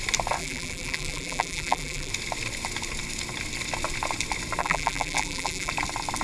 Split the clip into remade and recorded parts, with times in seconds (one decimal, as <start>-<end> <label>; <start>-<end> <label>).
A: 0.0-0.4 recorded; 0.4-2.1 remade; 2.1-4.6 recorded; 4.6-5.7 remade; 5.7-6.2 recorded